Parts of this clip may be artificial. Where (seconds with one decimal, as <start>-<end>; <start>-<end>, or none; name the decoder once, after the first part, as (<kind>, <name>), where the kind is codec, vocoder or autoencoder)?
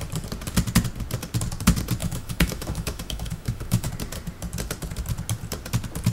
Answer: 2.0-3.9 (autoencoder, DAC-VAE)